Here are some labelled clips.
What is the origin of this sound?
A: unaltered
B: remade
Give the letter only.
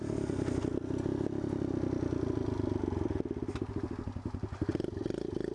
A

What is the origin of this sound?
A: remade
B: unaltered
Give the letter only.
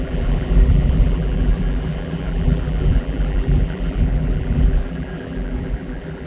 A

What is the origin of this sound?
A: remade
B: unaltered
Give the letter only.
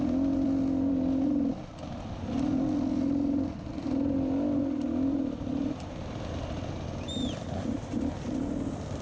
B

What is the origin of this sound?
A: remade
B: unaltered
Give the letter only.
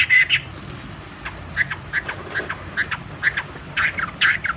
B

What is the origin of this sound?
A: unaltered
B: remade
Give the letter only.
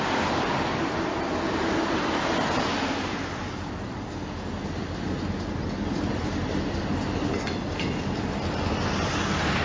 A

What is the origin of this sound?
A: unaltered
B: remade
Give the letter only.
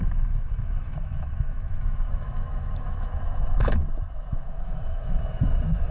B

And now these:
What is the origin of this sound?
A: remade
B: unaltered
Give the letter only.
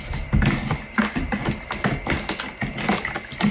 B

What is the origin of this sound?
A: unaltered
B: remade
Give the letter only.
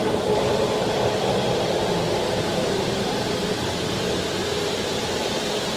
B